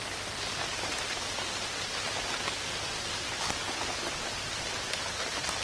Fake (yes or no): no